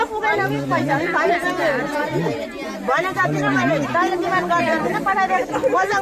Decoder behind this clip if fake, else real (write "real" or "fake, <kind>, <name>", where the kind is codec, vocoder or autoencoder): real